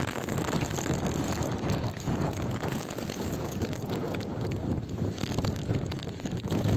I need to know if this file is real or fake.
fake